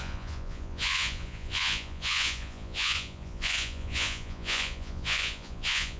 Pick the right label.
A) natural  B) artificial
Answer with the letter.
B